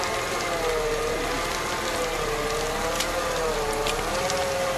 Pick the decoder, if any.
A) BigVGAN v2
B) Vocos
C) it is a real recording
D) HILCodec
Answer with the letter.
C